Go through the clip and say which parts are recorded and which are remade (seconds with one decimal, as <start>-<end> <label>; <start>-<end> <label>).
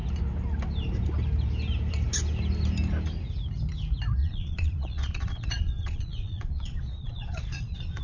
0.0-4.2 recorded; 4.2-8.0 remade